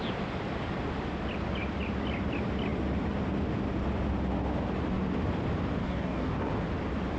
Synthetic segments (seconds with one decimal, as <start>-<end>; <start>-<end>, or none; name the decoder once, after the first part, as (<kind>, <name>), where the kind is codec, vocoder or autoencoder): 5.8-6.5 (codec, DAC)